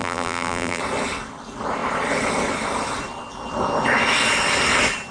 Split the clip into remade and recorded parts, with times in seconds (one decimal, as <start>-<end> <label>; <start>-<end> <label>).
0.0-0.8 remade; 0.8-5.1 recorded